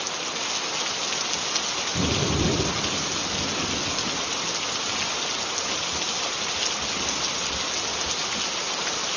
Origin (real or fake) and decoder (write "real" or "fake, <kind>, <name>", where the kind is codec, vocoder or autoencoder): real